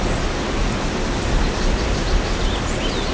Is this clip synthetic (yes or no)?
no